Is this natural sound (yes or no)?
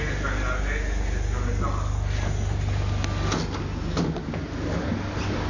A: yes